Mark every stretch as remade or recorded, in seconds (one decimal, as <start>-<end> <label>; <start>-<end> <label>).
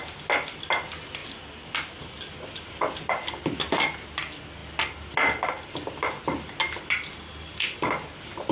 0.0-8.5 recorded